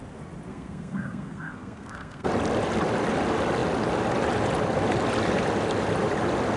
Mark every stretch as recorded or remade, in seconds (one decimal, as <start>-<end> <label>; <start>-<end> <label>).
0.0-0.5 recorded; 0.5-2.3 remade; 2.3-6.6 recorded